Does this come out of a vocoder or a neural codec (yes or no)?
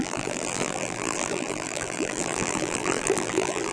yes